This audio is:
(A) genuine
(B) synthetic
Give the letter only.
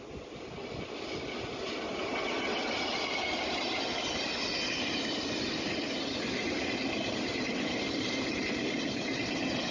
A